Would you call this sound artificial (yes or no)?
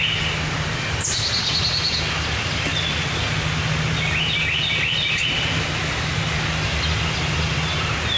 no